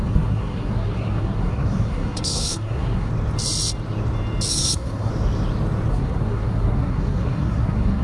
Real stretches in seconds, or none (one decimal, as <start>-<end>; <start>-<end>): 3.1-4.5; 5.1-5.9